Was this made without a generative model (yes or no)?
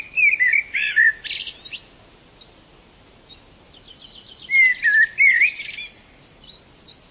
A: yes